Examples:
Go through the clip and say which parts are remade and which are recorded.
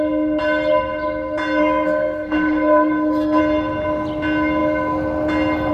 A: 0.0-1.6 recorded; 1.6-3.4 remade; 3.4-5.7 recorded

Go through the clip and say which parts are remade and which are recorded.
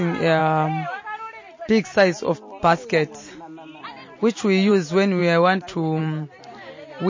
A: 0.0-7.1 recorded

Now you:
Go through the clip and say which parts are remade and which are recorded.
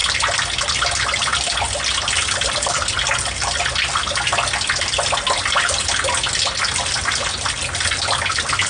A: 0.0-8.7 recorded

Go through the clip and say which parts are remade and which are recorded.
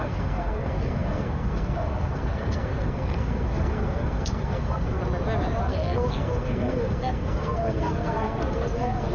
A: 0.0-5.0 remade; 5.0-5.6 recorded; 5.6-9.1 remade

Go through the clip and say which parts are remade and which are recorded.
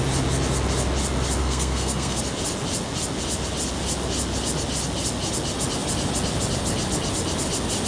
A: 0.0-1.4 recorded; 1.4-2.2 remade; 2.2-7.9 recorded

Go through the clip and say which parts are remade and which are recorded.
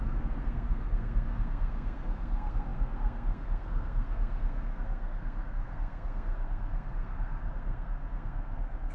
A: 0.0-8.9 remade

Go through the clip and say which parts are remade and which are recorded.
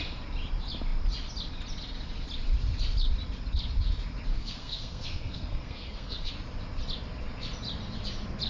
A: 0.0-4.3 recorded; 4.3-6.3 remade; 6.3-8.5 recorded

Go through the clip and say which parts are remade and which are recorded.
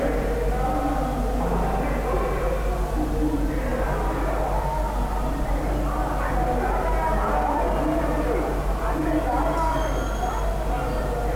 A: 0.0-11.4 recorded